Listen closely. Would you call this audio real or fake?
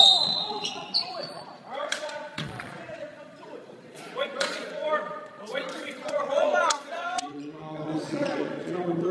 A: fake